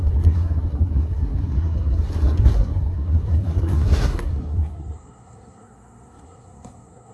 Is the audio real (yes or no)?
no